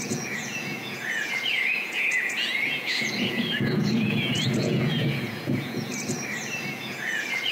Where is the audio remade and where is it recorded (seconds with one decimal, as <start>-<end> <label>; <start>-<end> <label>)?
0.0-5.9 remade; 5.9-6.7 recorded; 6.7-7.5 remade